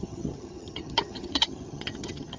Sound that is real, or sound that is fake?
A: fake